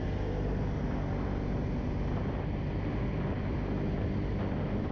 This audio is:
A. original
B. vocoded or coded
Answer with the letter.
A